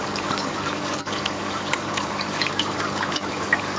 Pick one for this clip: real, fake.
fake